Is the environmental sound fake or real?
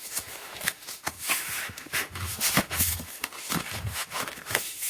fake